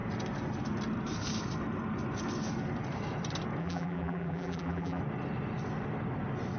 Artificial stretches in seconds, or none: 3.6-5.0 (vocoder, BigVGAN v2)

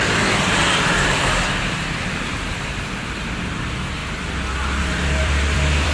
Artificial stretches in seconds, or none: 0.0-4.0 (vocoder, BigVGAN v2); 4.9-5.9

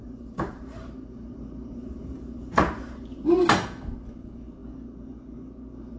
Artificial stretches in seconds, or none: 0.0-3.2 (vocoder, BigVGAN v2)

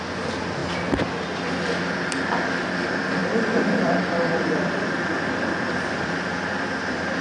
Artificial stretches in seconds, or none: 0.0-0.6 (vocoder, BigVGAN v2); 2.6-7.2